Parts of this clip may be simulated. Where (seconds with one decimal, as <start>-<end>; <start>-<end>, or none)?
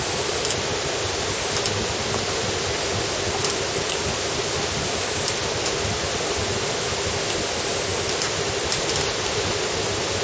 none